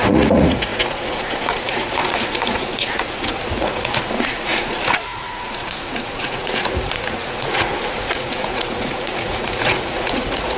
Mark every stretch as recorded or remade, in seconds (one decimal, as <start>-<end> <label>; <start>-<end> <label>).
0.0-10.6 remade